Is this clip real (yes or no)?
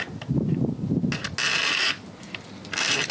yes